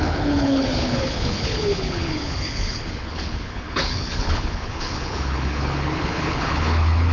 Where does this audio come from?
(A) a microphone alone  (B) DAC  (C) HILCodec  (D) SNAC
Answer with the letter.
C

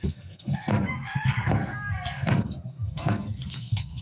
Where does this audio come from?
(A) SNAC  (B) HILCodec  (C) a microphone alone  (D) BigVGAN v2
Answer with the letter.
A